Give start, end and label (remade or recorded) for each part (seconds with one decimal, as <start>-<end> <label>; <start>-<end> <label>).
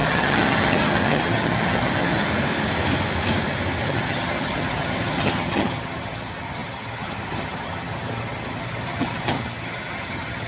0.0-2.3 remade; 2.3-3.8 recorded; 3.8-10.5 remade